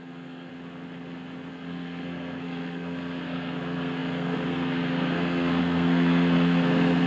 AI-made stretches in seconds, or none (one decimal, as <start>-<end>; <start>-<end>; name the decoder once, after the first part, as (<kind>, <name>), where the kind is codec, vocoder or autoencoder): 0.0-0.5 (codec, SNAC); 1.5-7.1